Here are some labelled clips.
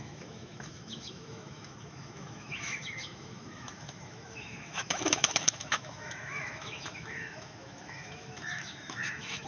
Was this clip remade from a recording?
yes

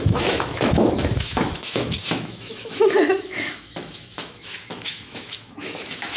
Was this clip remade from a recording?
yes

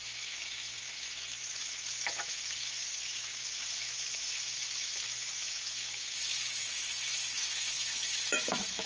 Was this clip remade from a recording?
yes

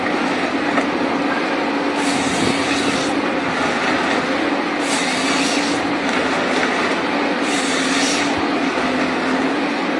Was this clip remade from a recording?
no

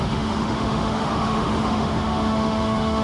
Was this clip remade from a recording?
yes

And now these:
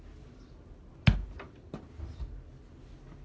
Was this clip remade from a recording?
no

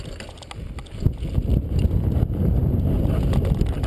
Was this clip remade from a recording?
no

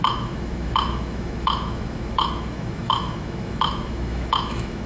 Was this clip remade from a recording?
yes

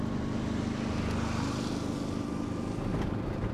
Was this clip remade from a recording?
no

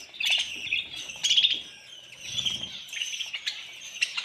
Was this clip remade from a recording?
no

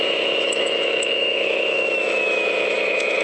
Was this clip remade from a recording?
yes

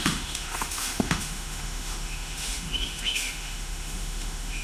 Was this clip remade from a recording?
yes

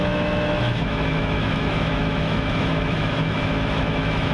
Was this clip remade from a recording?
yes